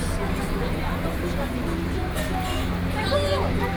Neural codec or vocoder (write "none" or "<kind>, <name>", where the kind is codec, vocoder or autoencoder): none